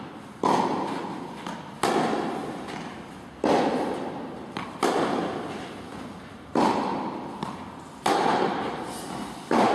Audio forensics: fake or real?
real